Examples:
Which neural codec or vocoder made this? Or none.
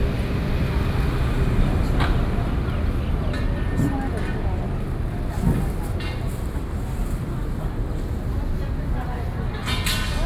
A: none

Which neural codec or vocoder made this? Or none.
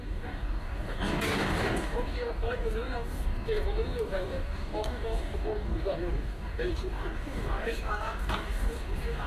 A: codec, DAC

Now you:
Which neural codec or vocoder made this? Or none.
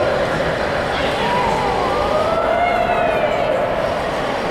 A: none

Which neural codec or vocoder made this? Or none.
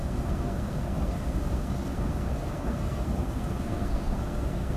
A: codec, SNAC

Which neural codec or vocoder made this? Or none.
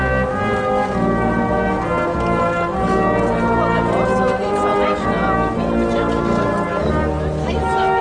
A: none